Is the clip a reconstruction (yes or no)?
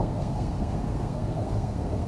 yes